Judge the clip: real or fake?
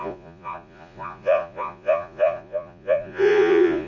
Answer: fake